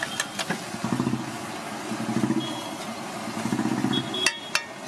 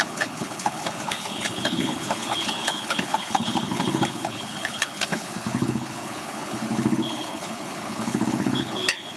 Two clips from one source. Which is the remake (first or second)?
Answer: second